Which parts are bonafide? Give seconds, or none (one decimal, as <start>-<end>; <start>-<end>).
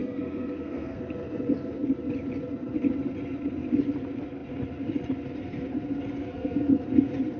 1.0-6.2; 6.7-7.4